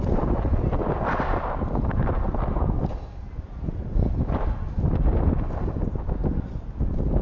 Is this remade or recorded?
recorded